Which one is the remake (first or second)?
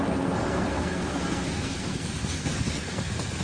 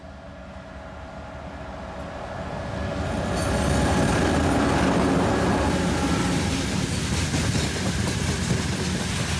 first